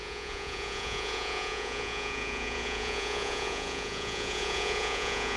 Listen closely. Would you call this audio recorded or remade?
remade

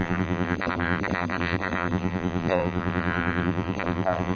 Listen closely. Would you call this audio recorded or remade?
remade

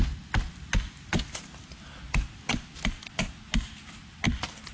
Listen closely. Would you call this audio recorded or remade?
recorded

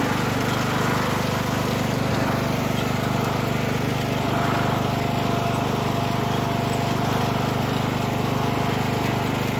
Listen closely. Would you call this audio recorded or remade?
recorded